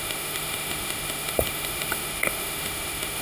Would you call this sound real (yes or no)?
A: no